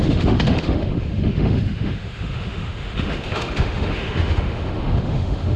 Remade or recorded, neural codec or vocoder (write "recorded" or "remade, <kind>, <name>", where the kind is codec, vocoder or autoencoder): remade, autoencoder, DAC-VAE